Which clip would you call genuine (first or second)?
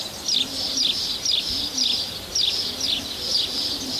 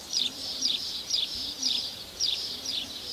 first